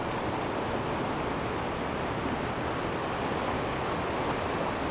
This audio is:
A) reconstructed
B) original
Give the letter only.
B